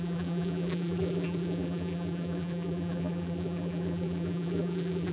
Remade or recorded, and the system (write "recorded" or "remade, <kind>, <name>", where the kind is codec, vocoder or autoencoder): remade, vocoder, BigVGAN v2